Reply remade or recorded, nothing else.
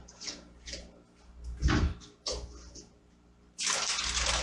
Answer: recorded